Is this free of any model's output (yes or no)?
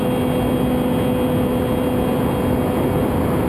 yes